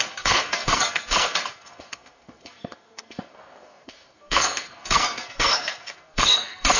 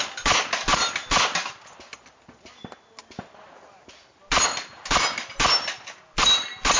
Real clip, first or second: second